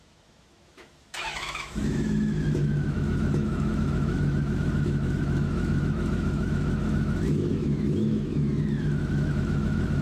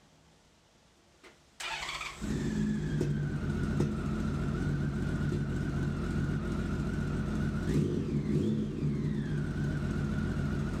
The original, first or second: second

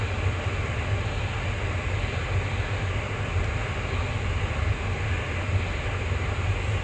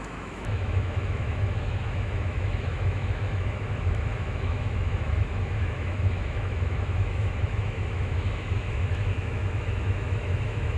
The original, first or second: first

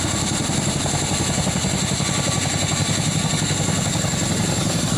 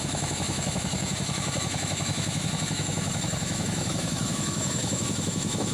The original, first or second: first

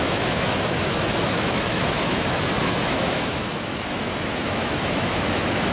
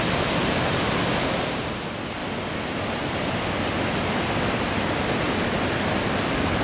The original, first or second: second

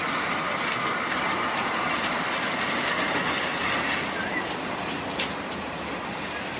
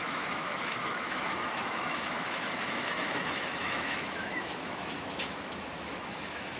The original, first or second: first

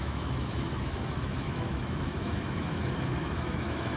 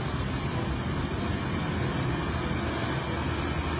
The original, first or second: second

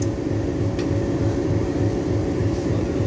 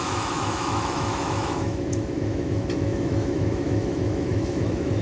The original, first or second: first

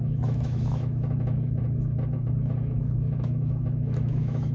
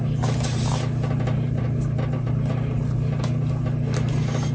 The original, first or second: second